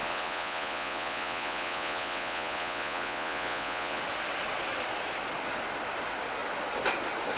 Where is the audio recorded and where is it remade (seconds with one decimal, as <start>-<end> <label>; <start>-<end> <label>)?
0.0-4.0 remade; 4.0-7.4 recorded

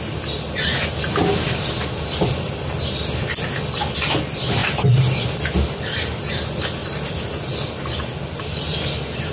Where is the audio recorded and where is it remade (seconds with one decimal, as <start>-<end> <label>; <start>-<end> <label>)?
0.0-9.3 recorded

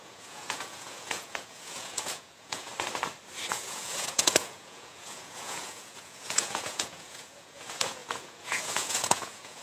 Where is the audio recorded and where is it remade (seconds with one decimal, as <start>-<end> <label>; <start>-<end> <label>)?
0.0-2.7 remade; 2.7-3.5 recorded; 3.5-9.6 remade

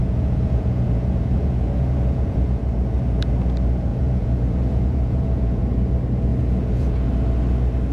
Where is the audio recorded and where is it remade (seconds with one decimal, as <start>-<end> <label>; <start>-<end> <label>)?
0.0-2.6 remade; 2.6-3.9 recorded; 3.9-5.6 remade; 5.6-6.3 recorded; 6.3-7.1 remade; 7.1-7.9 recorded

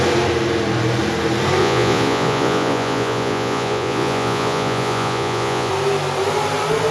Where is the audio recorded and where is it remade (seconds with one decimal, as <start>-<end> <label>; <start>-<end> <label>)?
0.0-1.6 recorded; 1.6-5.7 remade; 5.7-6.9 recorded